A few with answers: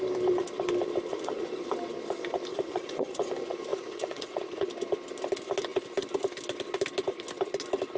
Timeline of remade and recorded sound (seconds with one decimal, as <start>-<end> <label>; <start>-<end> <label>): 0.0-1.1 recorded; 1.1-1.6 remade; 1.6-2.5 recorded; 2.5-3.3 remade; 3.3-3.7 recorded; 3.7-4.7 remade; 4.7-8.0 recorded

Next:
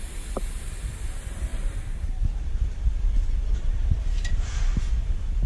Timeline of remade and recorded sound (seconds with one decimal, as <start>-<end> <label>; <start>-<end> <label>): 0.0-1.5 recorded; 1.5-2.7 remade; 2.7-3.8 recorded; 3.8-4.5 remade; 4.5-5.5 recorded

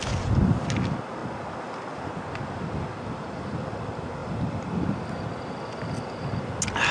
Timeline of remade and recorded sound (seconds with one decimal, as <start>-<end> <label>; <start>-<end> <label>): 0.0-6.9 recorded

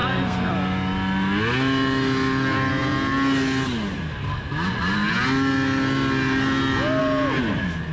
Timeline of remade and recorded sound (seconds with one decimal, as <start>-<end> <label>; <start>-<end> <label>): 0.0-0.5 remade; 0.5-7.9 recorded

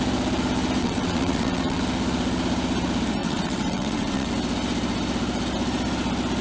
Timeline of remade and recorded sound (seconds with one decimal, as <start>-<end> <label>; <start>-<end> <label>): 0.0-0.8 recorded; 0.8-1.8 remade; 1.8-3.2 recorded; 3.2-4.3 remade; 4.3-6.4 recorded

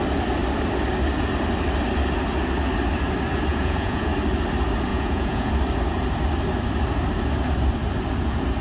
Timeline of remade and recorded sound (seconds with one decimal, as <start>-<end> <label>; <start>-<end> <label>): 0.0-3.5 recorded; 3.5-4.1 remade; 4.1-4.9 recorded; 4.9-5.5 remade; 5.5-8.6 recorded